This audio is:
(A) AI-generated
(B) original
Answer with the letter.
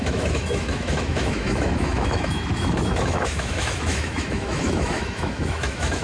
A